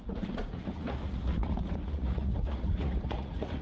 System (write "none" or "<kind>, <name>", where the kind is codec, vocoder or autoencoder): vocoder, Vocos